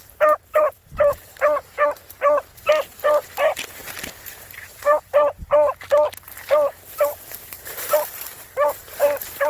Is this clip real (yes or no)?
yes